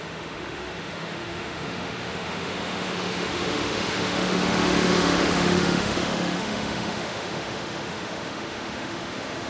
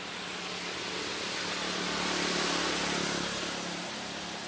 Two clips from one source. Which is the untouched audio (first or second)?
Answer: second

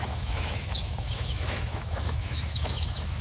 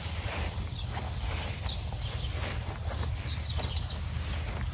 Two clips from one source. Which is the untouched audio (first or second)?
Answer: second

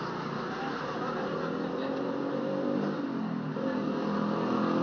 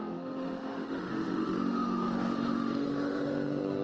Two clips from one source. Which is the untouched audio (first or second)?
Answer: first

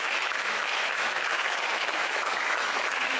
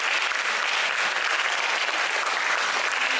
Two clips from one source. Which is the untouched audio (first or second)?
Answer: second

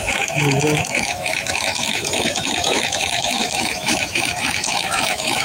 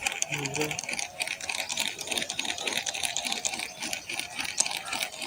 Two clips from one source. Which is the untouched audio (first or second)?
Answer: second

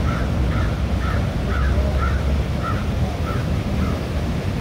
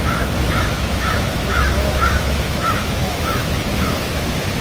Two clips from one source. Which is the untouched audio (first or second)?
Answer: first